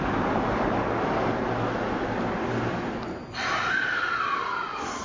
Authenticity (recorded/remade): recorded